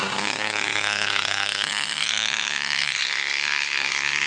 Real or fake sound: fake